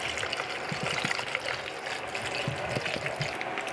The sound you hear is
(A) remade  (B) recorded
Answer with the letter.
B